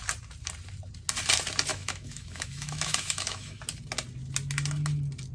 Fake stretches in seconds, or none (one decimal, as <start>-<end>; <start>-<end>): 1.7-3.6